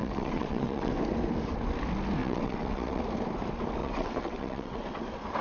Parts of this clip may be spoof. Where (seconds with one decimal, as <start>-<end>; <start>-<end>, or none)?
0.0-0.9; 2.2-3.0; 3.8-4.9